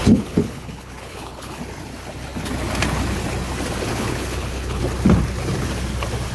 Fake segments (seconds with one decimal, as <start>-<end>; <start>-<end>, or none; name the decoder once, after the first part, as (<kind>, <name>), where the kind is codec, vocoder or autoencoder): 0.0-1.6 (codec, HILCodec); 3.9-4.8